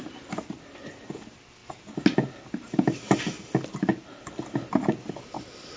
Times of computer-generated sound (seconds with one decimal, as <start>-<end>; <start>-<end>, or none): none